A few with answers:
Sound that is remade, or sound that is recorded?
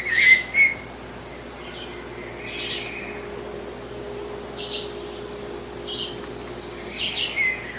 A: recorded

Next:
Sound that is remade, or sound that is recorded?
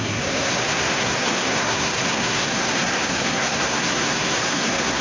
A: remade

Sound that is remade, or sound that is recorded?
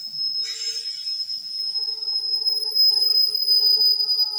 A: recorded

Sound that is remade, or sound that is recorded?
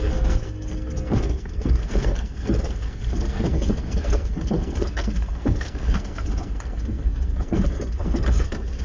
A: remade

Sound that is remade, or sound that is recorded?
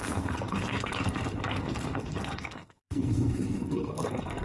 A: remade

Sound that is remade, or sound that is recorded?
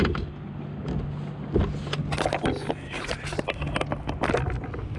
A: recorded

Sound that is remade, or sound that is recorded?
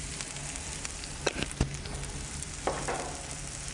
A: recorded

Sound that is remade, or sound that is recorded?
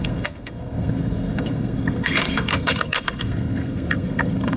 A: remade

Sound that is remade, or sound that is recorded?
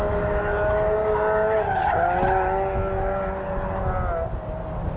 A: recorded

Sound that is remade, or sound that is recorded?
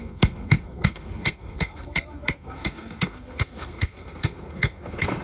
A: remade